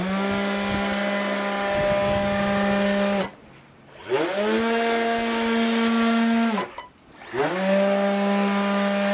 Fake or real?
real